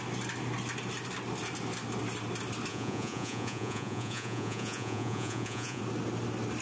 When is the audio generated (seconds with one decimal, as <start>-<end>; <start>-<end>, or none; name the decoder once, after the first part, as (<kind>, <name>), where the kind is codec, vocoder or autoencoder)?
2.7-5.8 (vocoder, Vocos)